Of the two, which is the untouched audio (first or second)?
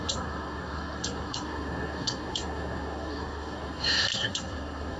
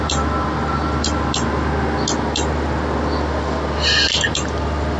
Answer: second